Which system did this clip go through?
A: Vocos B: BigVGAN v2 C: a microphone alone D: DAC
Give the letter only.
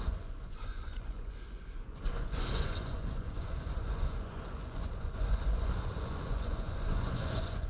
A